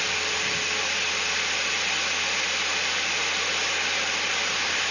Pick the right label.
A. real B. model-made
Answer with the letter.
A